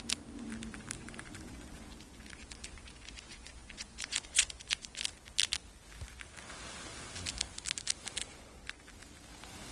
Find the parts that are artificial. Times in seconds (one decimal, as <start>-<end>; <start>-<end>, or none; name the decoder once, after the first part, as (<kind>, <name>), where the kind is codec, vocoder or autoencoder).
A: 1.0-5.0 (vocoder, Vocos); 8.2-8.8